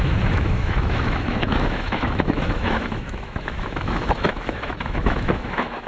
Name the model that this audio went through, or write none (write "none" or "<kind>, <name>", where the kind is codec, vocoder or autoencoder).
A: autoencoder, DAC-VAE